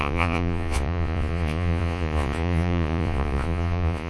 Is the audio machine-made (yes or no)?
yes